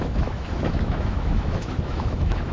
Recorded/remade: remade